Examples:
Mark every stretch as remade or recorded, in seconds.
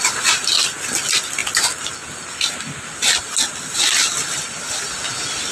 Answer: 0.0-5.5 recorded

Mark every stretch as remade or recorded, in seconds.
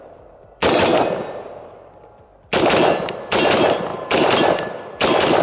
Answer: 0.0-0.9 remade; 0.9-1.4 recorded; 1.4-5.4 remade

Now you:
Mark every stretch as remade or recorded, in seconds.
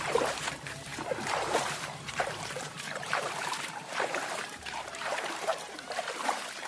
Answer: 0.0-5.5 remade; 5.5-6.7 recorded